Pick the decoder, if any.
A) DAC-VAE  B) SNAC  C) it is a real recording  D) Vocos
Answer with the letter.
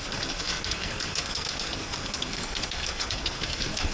B